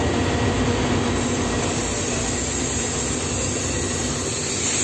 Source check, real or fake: real